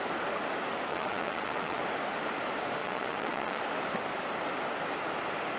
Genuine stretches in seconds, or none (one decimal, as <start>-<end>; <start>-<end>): 0.0-0.9; 1.8-2.8; 3.6-5.6